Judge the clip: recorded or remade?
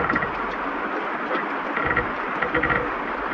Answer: remade